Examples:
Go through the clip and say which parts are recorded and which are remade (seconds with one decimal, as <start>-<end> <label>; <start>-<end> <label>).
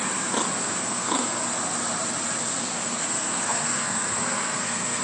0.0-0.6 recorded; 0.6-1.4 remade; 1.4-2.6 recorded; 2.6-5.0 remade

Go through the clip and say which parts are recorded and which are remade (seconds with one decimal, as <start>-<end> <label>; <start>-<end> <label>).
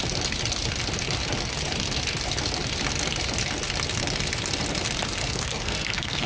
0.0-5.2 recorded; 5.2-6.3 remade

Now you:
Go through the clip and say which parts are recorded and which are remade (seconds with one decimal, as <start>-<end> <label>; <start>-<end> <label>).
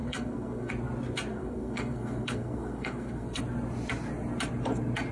0.0-0.7 remade; 0.7-1.3 recorded; 1.3-3.4 remade; 3.4-5.1 recorded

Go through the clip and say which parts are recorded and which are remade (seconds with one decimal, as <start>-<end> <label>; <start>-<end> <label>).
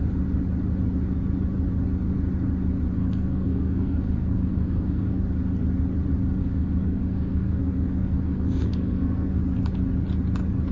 0.0-3.0 recorded; 3.0-5.2 remade; 5.2-6.4 recorded; 6.4-9.4 remade; 9.4-10.7 recorded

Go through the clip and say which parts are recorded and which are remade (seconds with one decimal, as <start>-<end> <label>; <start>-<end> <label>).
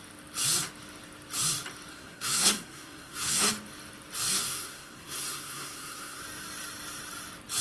0.0-1.9 recorded; 1.9-3.5 remade; 3.5-4.4 recorded; 4.4-6.2 remade; 6.2-7.6 recorded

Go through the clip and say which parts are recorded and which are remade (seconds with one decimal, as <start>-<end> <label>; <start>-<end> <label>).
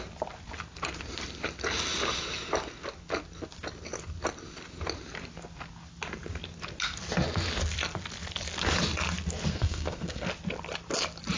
0.0-9.5 recorded; 9.5-10.3 remade; 10.3-11.4 recorded